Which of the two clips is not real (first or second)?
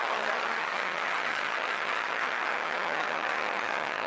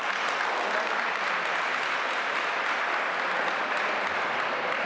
first